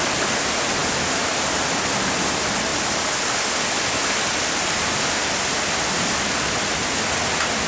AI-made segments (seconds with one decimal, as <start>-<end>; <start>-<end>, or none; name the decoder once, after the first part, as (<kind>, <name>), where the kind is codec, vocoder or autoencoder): none